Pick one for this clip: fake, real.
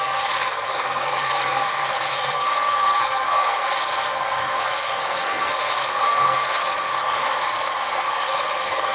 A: fake